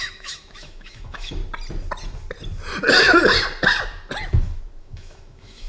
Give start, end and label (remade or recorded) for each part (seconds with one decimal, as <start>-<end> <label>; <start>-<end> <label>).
0.0-1.4 remade; 1.4-4.8 recorded; 4.8-5.7 remade